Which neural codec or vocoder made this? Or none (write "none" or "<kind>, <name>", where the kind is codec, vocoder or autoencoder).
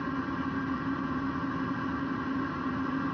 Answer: none